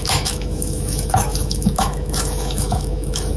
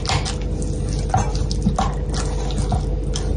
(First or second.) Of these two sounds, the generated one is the first